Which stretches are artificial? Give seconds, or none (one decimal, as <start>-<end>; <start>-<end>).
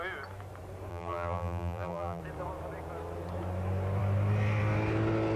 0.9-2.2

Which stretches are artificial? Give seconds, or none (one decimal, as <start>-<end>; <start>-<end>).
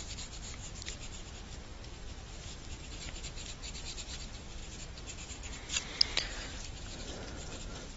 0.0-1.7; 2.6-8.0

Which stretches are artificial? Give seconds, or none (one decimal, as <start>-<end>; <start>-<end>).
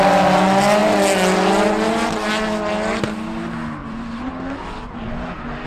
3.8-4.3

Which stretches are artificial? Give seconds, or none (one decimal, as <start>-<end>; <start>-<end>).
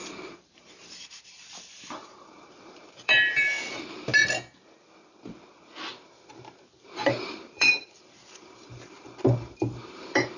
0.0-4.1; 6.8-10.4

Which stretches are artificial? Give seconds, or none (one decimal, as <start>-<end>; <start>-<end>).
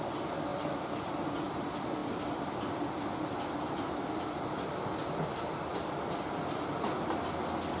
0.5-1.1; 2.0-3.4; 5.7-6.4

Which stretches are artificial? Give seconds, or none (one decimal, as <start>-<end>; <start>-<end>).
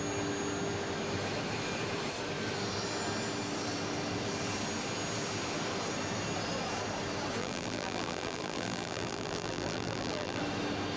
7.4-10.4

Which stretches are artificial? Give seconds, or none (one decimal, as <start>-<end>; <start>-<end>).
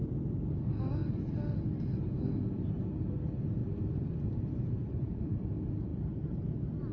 3.6-5.5; 5.9-6.5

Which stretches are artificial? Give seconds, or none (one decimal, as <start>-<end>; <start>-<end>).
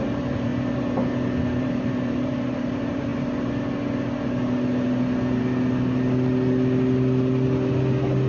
0.0-0.5; 1.6-3.1